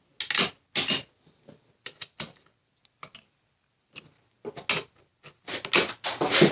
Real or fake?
real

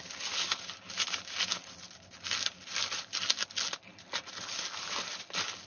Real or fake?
real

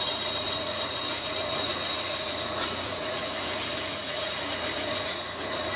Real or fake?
fake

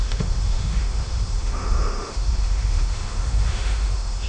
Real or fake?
fake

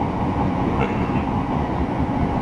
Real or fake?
fake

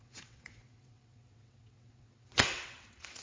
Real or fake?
fake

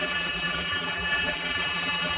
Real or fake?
fake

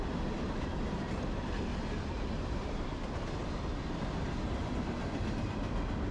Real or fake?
fake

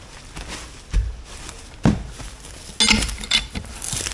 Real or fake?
real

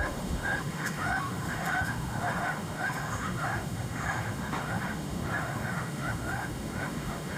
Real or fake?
fake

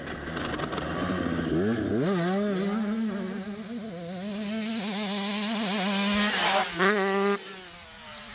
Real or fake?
real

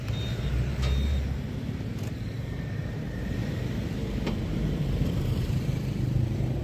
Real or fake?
fake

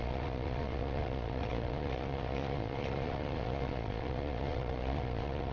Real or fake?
fake